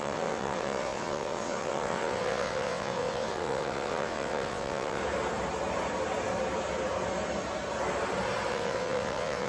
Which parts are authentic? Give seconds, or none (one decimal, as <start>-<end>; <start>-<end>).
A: 5.0-8.5